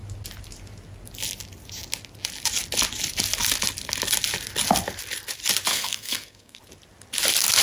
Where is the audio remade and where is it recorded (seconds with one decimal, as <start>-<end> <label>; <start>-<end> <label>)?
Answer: 0.0-5.7 recorded; 5.7-6.6 remade; 6.6-7.6 recorded